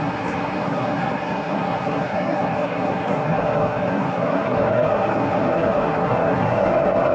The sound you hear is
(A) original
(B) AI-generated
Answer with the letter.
B